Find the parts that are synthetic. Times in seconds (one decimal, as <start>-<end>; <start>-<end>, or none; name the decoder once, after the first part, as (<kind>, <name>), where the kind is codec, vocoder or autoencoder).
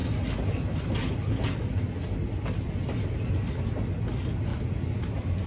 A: none